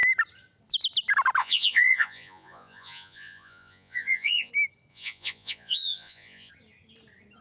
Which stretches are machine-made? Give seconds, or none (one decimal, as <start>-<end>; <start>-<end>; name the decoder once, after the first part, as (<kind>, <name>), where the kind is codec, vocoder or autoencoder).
1.4-4.5 (vocoder, Vocos); 4.9-6.5